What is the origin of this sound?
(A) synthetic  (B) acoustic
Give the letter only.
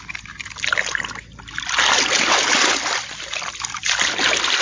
B